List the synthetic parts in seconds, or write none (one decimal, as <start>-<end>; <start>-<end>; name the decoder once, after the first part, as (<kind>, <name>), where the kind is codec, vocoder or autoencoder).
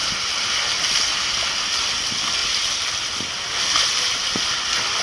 1.1-2.4 (vocoder, BigVGAN v2); 4.4-5.0